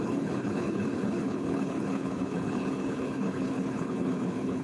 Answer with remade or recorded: remade